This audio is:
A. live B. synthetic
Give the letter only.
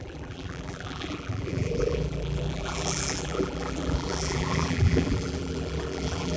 B